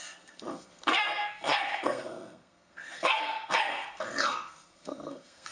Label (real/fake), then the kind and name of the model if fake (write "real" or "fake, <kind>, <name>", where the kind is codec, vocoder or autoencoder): fake, codec, SNAC